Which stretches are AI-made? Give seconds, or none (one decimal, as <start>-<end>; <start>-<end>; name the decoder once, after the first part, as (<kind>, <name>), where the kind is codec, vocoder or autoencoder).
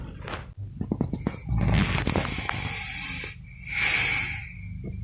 none